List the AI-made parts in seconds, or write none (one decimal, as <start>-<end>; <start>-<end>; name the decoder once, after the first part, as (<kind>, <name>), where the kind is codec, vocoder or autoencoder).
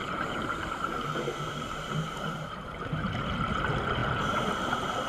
0.0-3.1 (vocoder, BigVGAN v2)